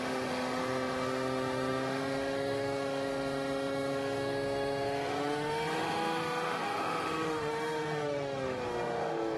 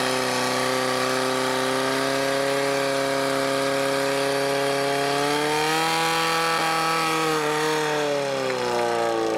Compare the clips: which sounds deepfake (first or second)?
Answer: first